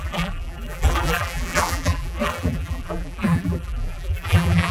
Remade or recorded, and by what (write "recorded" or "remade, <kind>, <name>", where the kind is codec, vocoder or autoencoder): remade, vocoder, BigVGAN v2